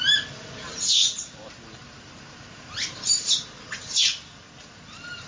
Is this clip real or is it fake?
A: real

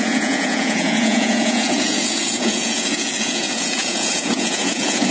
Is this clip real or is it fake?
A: fake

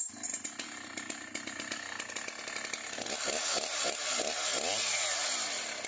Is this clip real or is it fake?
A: real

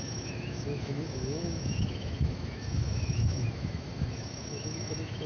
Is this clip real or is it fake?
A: fake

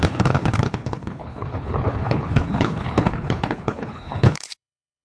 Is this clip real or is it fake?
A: fake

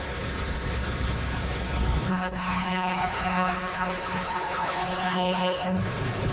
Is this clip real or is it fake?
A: fake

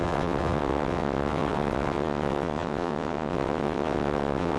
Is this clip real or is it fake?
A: fake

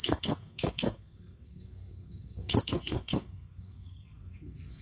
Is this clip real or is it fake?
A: fake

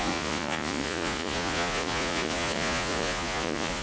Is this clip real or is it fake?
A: fake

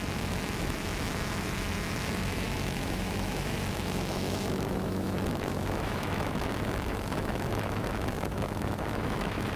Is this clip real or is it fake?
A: fake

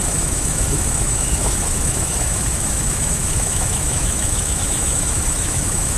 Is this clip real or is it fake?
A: fake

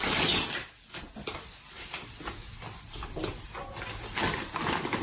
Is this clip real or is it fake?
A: real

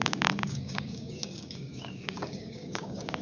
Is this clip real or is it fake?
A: fake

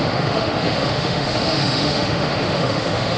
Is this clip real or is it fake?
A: fake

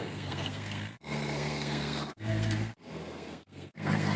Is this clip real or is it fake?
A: fake